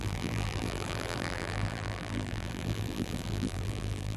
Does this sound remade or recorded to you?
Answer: remade